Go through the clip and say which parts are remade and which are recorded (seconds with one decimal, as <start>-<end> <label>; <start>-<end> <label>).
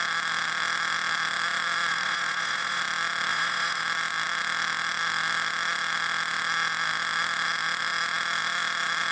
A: 0.0-1.9 recorded; 1.9-2.8 remade; 2.8-3.3 recorded; 3.3-3.8 remade; 3.8-9.1 recorded